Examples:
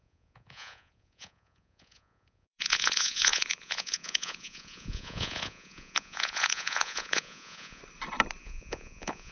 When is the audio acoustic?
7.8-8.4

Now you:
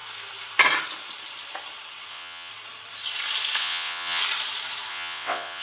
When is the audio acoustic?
0.0-2.1; 2.5-3.6; 4.2-4.9

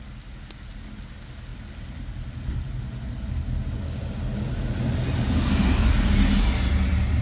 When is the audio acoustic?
0.0-7.2

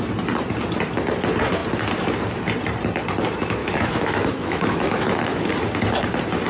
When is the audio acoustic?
0.0-3.6; 5.5-6.5

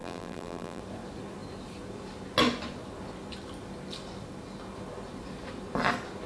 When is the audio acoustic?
0.8-6.3

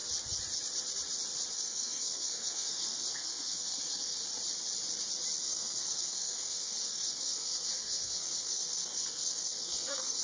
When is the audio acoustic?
0.0-1.5; 4.3-5.4

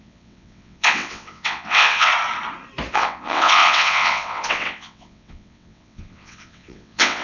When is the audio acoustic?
2.1-2.9

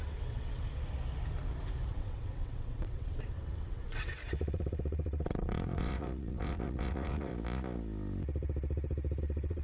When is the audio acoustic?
0.6-1.9; 7.3-9.2